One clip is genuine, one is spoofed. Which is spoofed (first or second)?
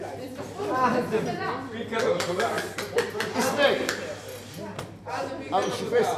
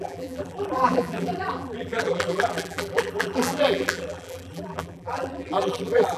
second